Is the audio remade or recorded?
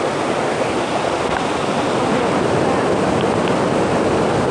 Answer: recorded